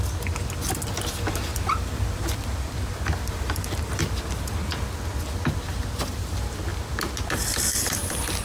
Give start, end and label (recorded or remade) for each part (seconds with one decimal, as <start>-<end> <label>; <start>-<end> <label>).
0.0-1.5 recorded; 1.5-4.0 remade; 4.0-6.7 recorded; 6.7-8.4 remade